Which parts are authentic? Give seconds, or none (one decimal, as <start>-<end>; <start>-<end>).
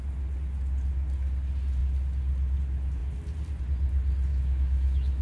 0.0-4.3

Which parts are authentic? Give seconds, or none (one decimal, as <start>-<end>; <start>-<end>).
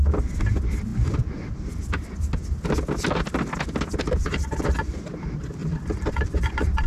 0.0-5.6